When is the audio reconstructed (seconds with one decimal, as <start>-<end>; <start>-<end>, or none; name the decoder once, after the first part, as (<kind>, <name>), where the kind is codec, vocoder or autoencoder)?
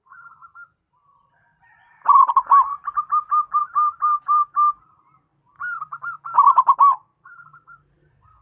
0.0-2.7 (vocoder, BigVGAN v2); 3.6-5.3; 6.5-8.4